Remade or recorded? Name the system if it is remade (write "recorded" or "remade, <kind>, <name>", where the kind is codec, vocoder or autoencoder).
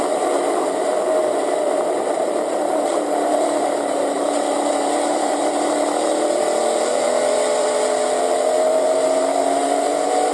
remade, vocoder, BigVGAN v2